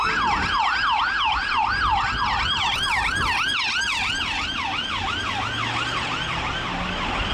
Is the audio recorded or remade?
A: recorded